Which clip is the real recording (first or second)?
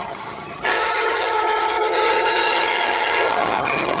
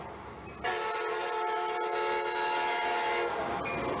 second